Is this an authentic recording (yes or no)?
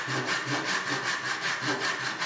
yes